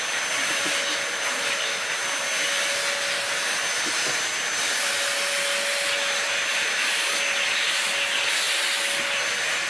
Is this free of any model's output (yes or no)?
yes